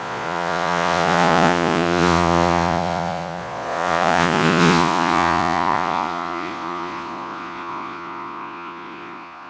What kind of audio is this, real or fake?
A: fake